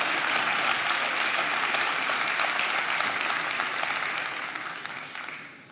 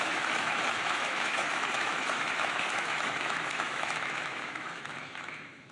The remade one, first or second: second